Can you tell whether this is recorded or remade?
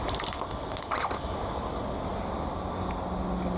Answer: recorded